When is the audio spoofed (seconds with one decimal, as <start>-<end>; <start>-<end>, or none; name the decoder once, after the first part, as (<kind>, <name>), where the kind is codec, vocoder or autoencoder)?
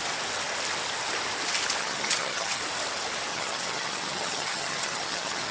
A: 1.8-2.6 (vocoder, HiFi-GAN); 3.3-5.5